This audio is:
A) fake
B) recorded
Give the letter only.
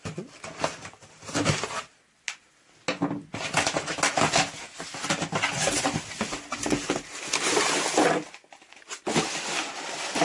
B